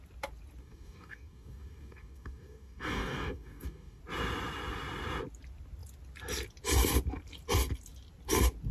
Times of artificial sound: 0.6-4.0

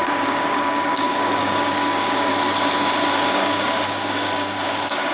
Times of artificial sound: 0.0-2.3; 3.0-5.1

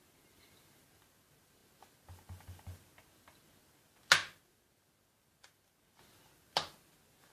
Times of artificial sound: none

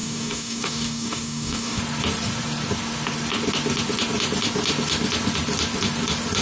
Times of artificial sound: 0.0-1.8